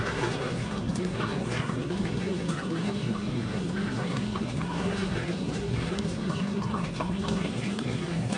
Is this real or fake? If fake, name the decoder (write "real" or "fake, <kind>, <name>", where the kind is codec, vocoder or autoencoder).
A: fake, codec, SNAC